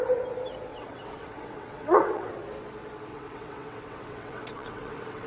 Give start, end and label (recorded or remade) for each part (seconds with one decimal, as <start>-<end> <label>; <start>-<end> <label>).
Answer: 0.0-0.7 recorded; 0.7-2.3 remade; 2.3-3.1 recorded; 3.1-5.3 remade